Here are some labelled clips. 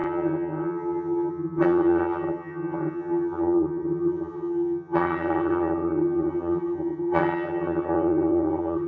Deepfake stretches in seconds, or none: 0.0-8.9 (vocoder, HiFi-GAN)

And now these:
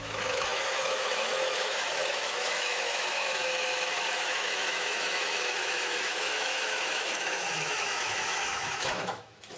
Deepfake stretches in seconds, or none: 0.0-9.6 (autoencoder, DAC-VAE)

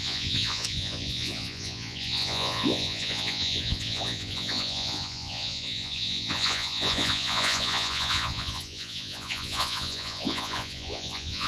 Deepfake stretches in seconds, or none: 0.0-11.5 (vocoder, Vocos)